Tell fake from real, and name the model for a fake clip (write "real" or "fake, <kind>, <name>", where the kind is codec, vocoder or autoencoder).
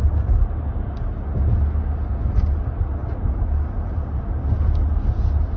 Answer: real